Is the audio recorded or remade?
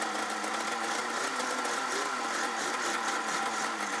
recorded